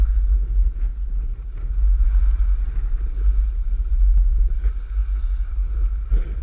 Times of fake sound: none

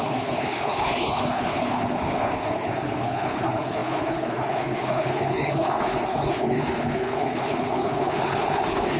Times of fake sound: 0.0-9.0 (codec, HILCodec)

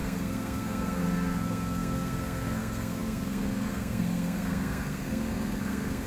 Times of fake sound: 0.0-6.1 (codec, SNAC)

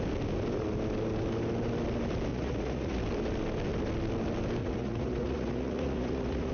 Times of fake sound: 2.3-3.0 (vocoder, Vocos); 4.6-6.5

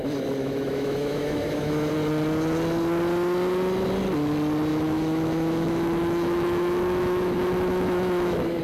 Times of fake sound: 0.4-1.9 (autoencoder, DAC-VAE); 4.7-8.6

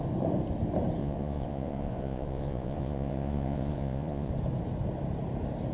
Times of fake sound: 1.0-4.3 (vocoder, Vocos)